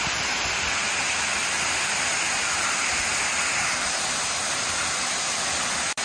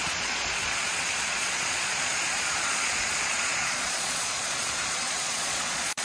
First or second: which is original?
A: first